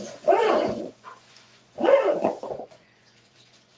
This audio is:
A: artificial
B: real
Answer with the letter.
A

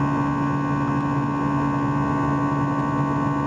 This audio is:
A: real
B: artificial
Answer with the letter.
A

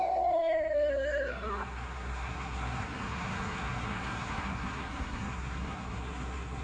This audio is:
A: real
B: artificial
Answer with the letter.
B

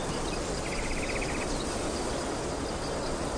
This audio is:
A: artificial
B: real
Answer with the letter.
B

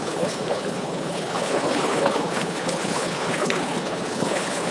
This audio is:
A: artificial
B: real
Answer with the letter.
A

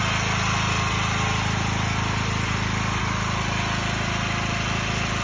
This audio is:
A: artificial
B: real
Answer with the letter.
B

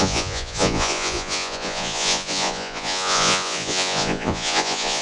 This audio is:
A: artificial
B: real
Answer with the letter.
A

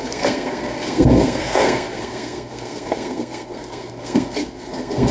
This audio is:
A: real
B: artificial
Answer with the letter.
B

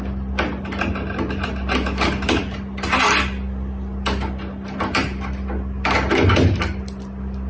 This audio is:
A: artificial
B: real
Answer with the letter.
B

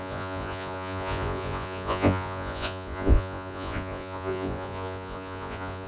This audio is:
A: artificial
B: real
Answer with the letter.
A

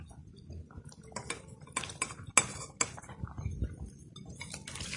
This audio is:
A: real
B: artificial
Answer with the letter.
A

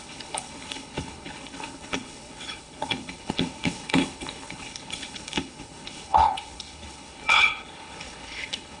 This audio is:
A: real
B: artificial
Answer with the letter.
B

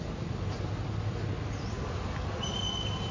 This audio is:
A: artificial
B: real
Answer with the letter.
B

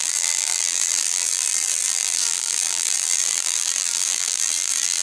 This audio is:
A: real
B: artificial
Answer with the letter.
B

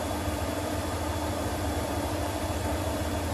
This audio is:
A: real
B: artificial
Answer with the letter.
B